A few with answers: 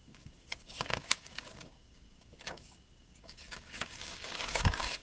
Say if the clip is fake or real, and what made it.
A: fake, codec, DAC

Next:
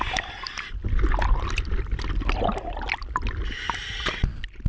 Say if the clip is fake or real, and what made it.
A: real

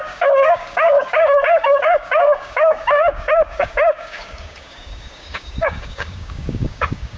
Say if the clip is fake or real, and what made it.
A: fake, codec, DAC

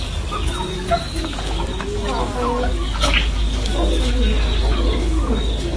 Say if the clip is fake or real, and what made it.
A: fake, codec, DAC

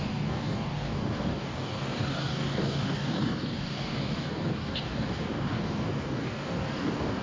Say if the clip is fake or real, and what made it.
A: fake, codec, DAC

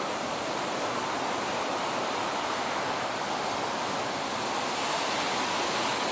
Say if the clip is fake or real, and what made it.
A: real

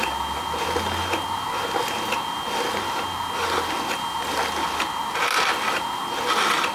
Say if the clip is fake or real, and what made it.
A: real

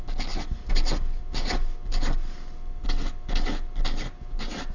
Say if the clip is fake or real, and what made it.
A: real